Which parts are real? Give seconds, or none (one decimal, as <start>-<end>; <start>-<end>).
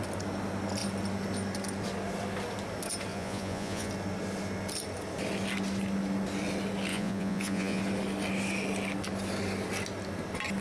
0.0-3.1; 3.9-6.9; 7.8-10.6